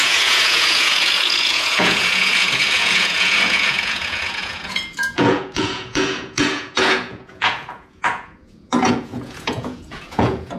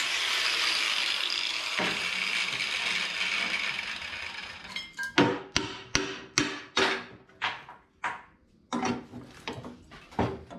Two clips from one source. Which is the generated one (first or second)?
first